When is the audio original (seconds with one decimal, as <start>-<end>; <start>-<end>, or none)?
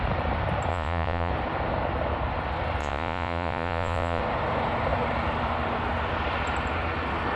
0.0-0.7; 1.3-2.8; 4.2-7.4